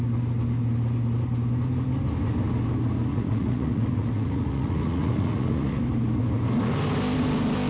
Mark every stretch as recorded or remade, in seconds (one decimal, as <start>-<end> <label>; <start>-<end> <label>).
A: 0.0-3.1 recorded; 3.1-5.8 remade; 5.8-7.7 recorded